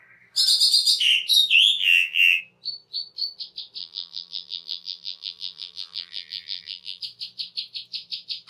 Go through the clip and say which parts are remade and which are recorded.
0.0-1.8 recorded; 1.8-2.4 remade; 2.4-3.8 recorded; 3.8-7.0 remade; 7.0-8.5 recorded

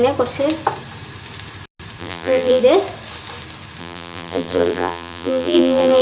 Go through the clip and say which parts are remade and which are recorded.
0.0-2.0 recorded; 2.0-2.6 remade; 2.6-3.8 recorded; 3.8-6.0 remade

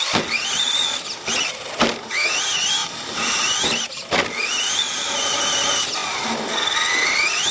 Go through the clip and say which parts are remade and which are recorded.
0.0-2.8 recorded; 2.8-3.6 remade; 3.6-7.5 recorded

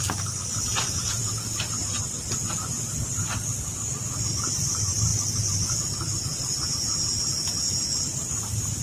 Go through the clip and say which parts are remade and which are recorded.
0.0-0.7 recorded; 0.7-1.3 remade; 1.3-8.8 recorded

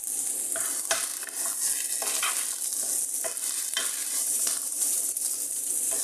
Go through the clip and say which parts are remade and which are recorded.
0.0-4.0 recorded; 4.0-4.9 remade; 4.9-6.0 recorded